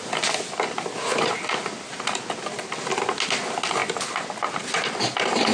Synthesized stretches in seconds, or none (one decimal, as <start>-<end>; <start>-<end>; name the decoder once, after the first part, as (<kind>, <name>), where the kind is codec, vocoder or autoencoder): none